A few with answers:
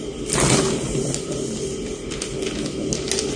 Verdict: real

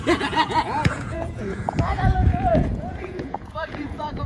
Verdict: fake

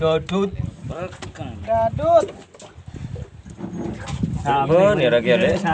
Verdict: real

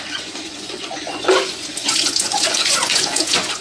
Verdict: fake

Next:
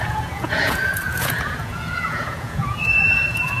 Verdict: fake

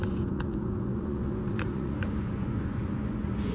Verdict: fake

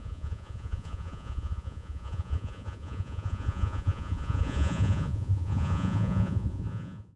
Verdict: fake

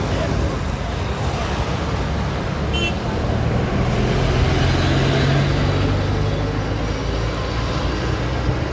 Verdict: real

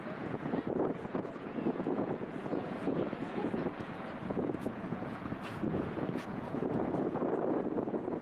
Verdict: fake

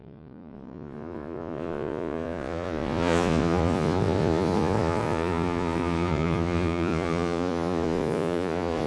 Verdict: fake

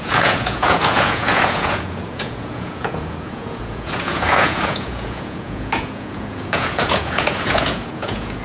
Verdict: fake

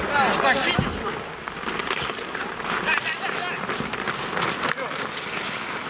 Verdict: real